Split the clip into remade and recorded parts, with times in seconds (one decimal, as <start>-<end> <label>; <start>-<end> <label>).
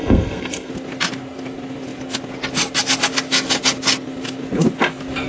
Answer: 0.0-0.7 remade; 0.7-5.3 recorded